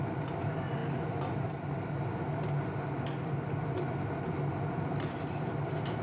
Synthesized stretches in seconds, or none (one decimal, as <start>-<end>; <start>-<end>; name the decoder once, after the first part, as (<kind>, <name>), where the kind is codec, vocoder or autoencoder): none